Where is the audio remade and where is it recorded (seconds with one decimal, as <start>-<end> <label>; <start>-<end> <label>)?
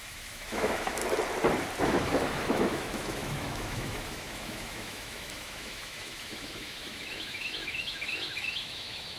0.0-1.0 remade; 1.0-1.8 recorded; 1.8-9.2 remade